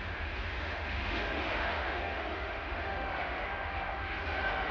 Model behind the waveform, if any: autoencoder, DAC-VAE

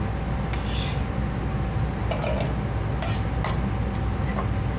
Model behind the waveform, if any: none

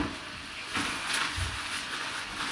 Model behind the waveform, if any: vocoder, Vocos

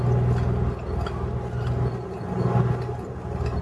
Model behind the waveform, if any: none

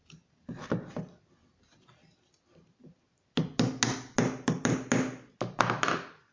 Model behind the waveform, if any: none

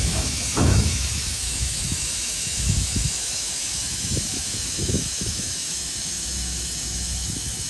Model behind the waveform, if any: autoencoder, DAC-VAE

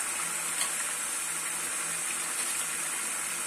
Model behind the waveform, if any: none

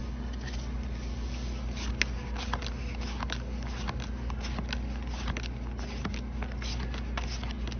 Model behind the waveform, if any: none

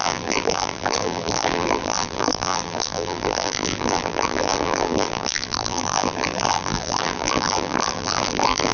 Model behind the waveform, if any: vocoder, BigVGAN v2